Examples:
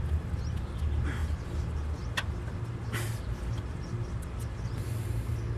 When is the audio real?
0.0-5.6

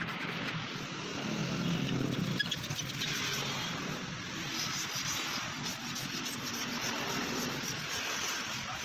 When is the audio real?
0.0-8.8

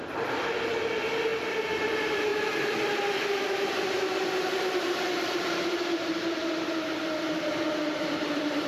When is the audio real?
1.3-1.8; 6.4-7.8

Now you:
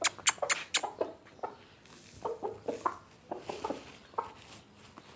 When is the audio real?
0.0-5.2

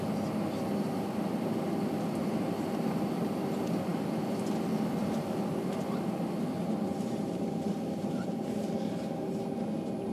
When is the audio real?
0.0-2.2; 3.1-6.9; 9.4-10.1